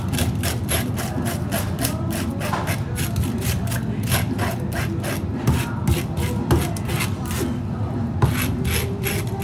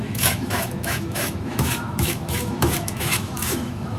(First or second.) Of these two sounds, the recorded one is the first